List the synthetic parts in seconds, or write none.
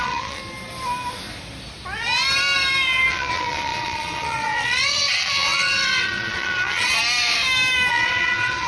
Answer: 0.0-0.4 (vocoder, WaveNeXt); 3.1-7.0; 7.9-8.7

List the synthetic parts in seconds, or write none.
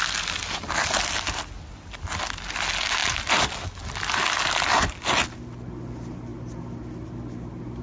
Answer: none